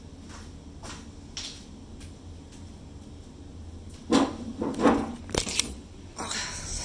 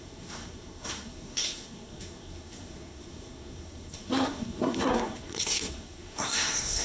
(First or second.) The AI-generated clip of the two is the second